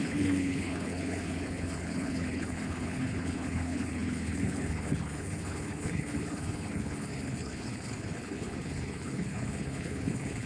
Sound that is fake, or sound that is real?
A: fake